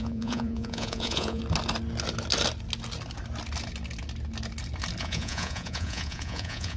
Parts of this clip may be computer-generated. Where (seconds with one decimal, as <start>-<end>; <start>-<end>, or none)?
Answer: 0.0-1.4; 5.0-6.8